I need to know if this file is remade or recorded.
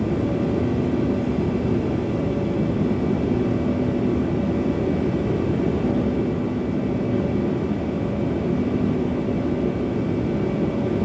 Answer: recorded